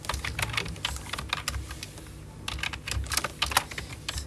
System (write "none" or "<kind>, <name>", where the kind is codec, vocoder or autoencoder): none